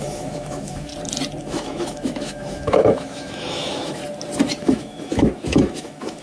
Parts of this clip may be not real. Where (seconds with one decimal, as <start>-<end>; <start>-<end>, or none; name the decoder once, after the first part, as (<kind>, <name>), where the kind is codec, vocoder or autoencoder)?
0.0-0.9 (autoencoder, DAC-VAE); 1.4-4.0; 4.6-6.2